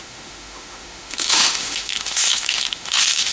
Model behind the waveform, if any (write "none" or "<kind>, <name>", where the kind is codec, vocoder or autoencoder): autoencoder, DAC-VAE